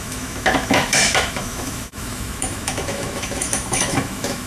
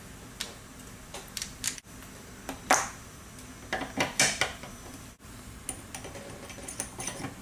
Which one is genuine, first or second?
second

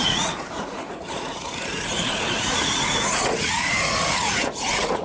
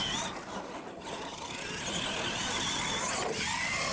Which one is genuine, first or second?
second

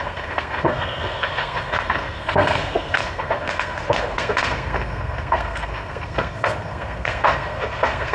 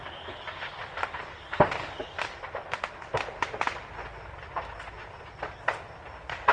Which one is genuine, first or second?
second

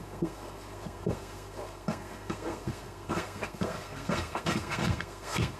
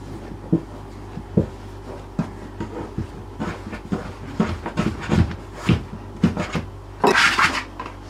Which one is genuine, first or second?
second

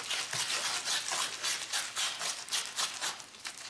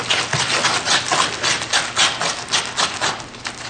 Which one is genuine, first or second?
second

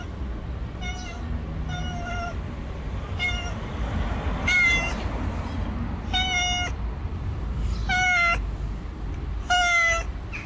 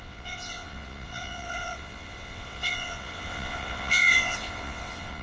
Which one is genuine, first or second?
first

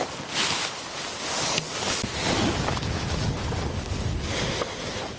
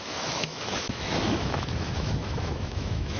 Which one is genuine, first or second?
first